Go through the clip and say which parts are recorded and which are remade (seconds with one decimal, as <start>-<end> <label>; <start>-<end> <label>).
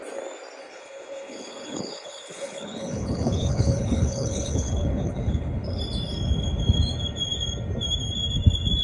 0.0-0.6 recorded; 0.6-5.8 remade; 5.8-8.8 recorded